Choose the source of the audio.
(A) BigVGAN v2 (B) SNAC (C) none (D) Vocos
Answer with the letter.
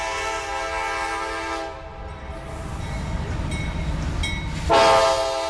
C